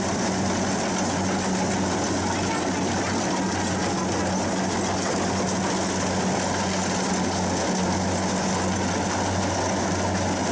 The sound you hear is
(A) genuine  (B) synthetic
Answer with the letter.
A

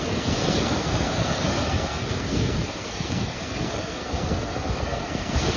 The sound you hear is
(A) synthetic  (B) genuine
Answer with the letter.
A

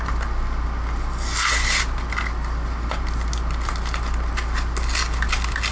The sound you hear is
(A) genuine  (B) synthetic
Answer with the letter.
A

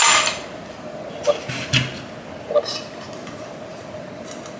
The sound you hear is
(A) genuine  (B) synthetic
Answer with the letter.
A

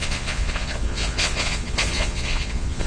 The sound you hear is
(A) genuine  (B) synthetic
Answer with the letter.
B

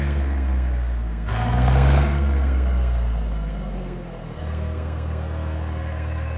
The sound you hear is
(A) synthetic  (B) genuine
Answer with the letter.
A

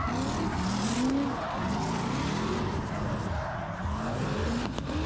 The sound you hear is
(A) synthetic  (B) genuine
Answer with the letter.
B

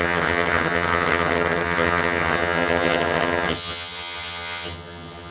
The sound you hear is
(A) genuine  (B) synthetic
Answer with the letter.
B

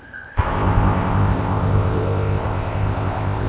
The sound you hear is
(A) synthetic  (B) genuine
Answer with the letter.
A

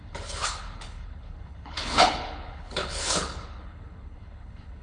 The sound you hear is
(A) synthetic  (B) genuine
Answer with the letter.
A